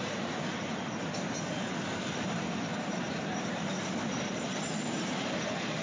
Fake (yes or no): no